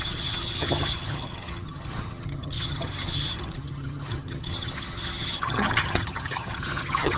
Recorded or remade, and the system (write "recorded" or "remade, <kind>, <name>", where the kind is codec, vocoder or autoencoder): remade, vocoder, HiFi-GAN